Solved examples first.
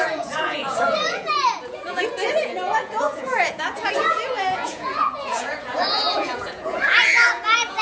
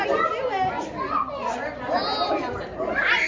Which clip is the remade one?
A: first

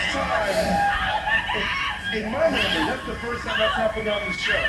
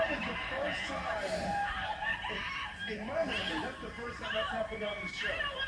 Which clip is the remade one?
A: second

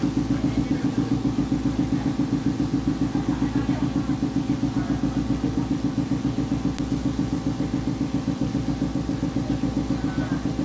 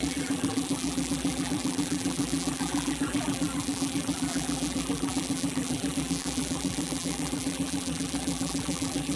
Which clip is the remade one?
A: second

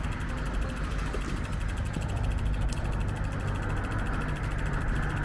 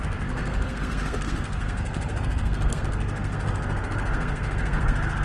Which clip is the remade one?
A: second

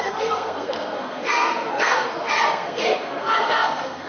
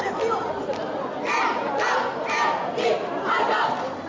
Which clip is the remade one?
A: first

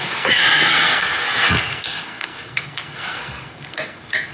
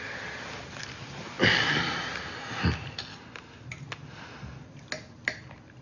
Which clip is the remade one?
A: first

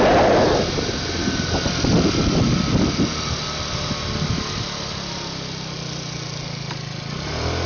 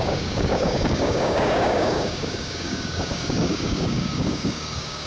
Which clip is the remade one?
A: second